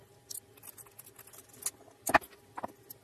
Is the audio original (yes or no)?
yes